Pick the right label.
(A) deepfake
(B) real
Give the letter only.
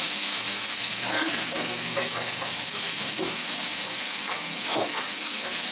A